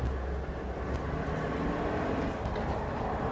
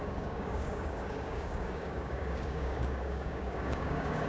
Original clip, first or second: first